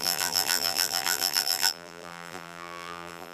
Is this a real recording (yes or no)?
no